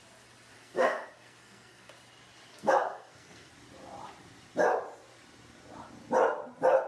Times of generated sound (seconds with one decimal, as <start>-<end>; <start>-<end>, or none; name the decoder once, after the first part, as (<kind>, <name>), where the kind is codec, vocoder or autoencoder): 0.6-1.9 (codec, SNAC); 2.5-3.5